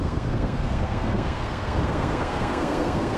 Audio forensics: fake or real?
fake